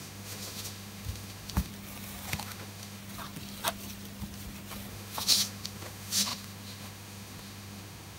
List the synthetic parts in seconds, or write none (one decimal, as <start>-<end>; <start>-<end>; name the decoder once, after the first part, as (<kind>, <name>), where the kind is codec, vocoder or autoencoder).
0.0-1.7 (autoencoder, DAC-VAE); 2.3-3.0; 4.9-8.2